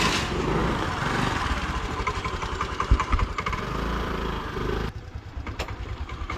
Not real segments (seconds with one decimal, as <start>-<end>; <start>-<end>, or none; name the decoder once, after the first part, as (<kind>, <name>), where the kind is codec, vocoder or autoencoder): 0.0-6.4 (vocoder, BigVGAN v2)